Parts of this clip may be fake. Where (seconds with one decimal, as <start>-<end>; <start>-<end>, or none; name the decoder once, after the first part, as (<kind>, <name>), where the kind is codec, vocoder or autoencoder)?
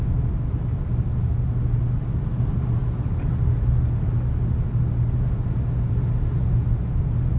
none